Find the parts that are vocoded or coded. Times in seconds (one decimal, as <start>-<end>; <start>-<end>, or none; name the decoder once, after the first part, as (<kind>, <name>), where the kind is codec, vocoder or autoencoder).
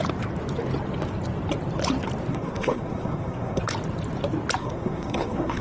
2.3-3.6 (codec, SNAC); 4.6-5.6